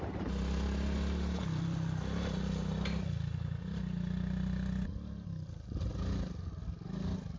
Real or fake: real